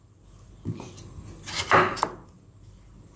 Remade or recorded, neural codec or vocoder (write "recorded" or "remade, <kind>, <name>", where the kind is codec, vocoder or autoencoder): recorded